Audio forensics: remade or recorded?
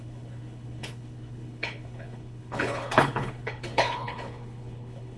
remade